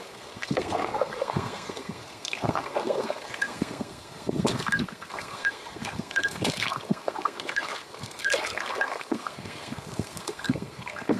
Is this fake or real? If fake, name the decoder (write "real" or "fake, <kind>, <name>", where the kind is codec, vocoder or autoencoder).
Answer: fake, codec, SNAC